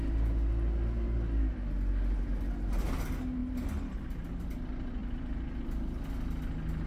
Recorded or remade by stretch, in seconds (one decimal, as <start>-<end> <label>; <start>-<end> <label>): 0.0-3.4 recorded; 3.4-4.4 remade; 4.4-5.0 recorded; 5.0-5.6 remade; 5.6-6.9 recorded

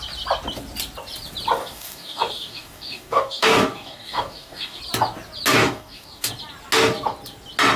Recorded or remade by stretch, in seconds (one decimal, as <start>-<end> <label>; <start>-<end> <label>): 0.0-1.6 recorded; 1.6-4.8 remade; 4.8-5.6 recorded; 5.6-6.3 remade; 6.3-7.8 recorded

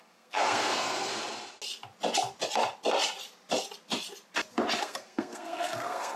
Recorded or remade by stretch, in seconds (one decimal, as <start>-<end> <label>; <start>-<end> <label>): 0.0-1.1 remade; 1.1-4.8 recorded; 4.8-6.2 remade

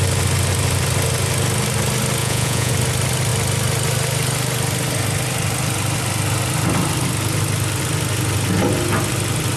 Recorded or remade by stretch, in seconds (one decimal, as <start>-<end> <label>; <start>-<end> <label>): 0.0-2.2 recorded; 2.2-2.7 remade; 2.7-9.6 recorded